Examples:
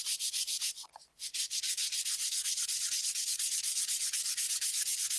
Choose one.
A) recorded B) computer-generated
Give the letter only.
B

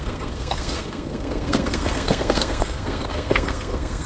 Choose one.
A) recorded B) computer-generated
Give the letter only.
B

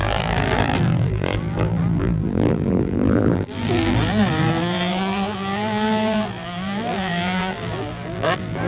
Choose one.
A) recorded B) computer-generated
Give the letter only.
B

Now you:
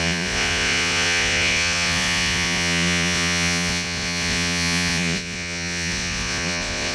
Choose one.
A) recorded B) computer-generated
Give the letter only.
B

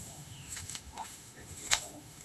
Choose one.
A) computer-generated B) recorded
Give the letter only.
A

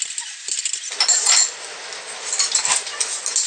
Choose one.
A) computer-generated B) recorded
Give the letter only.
B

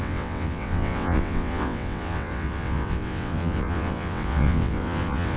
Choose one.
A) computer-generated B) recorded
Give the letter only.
A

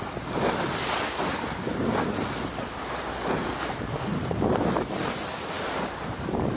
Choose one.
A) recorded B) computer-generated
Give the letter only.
A